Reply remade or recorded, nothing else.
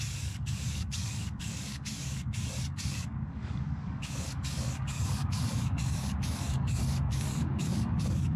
remade